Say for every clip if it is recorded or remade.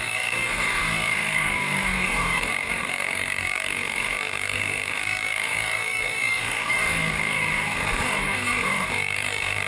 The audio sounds remade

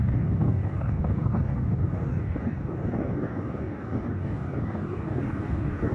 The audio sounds remade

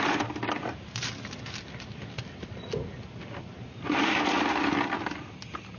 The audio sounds recorded